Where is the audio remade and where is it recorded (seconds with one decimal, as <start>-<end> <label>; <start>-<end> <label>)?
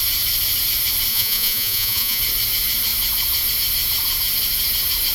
0.0-1.1 recorded; 1.1-2.2 remade; 2.2-5.1 recorded